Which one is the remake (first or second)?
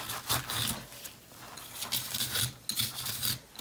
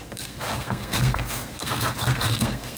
second